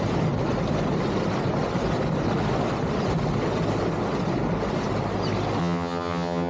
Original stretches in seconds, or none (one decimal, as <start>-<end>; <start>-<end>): 0.0-5.6